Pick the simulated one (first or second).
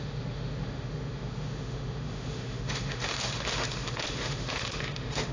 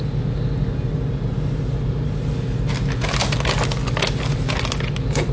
first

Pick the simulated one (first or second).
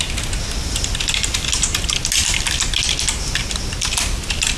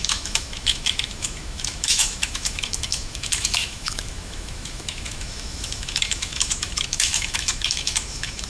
second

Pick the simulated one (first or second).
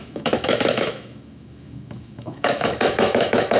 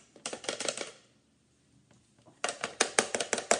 first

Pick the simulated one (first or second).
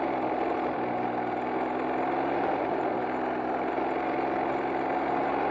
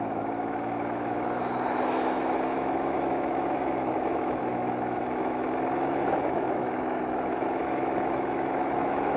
second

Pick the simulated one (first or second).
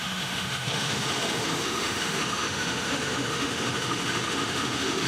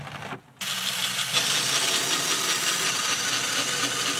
first